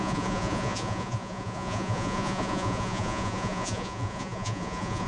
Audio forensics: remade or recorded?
remade